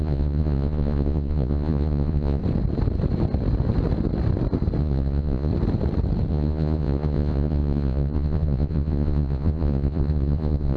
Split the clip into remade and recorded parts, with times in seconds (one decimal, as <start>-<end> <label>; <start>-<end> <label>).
0.0-2.4 remade; 2.4-4.8 recorded; 4.8-5.5 remade; 5.5-6.3 recorded; 6.3-10.8 remade